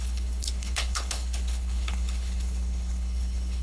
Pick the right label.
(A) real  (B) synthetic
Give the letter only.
B